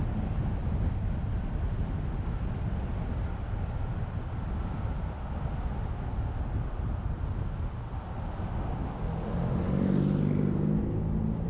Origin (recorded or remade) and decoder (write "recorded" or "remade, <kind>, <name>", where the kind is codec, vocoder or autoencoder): recorded